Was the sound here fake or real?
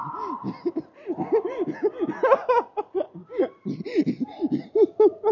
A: real